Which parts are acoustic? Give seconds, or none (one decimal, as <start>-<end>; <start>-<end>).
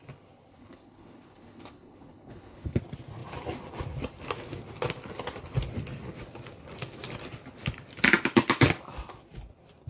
0.0-0.5; 2.8-9.9